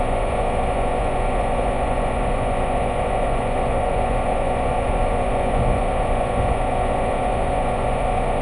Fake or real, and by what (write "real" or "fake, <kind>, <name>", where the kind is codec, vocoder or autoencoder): fake, vocoder, Vocos